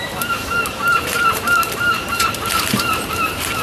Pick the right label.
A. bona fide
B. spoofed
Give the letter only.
B